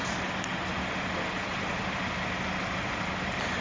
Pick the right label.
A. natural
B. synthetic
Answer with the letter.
A